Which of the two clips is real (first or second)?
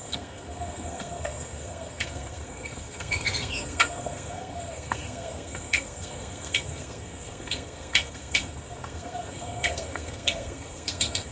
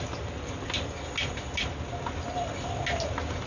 second